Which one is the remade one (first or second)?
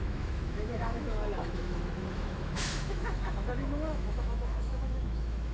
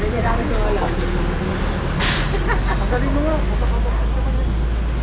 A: first